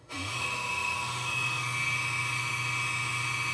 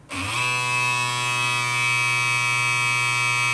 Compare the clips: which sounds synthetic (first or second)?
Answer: first